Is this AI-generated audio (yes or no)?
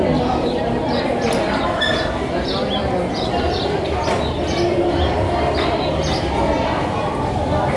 yes